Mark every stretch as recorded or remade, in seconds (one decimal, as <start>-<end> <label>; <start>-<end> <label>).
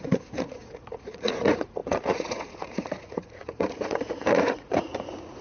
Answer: 0.0-5.4 remade